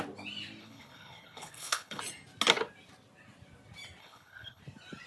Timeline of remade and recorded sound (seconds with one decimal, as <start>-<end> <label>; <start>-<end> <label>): 0.0-0.6 recorded; 0.6-2.0 remade; 2.0-4.0 recorded; 4.0-4.6 remade; 4.6-5.1 recorded